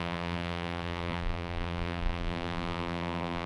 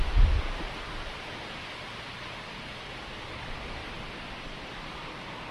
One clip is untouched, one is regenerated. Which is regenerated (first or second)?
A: first